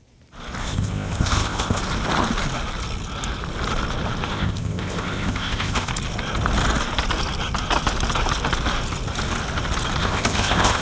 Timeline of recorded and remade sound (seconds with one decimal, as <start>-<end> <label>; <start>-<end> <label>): 0.0-0.6 recorded; 0.6-1.8 remade; 1.8-4.3 recorded; 4.3-5.9 remade; 5.9-10.0 recorded; 10.0-10.8 remade